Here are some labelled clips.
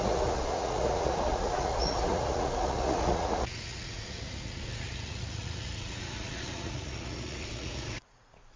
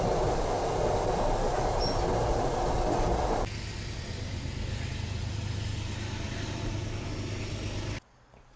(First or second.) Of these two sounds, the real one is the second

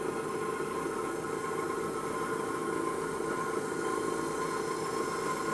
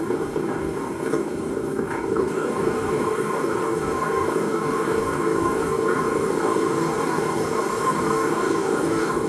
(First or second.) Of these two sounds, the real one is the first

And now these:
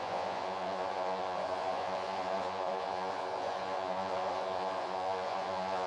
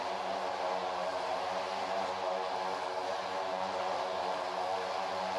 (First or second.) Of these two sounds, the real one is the second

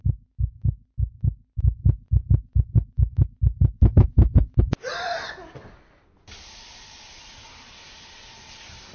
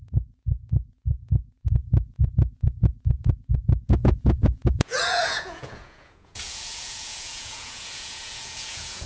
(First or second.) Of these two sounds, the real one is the first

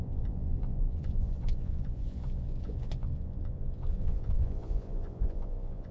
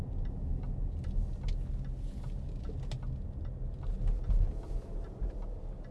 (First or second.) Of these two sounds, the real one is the second